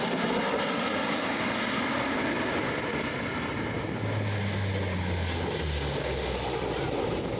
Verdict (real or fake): real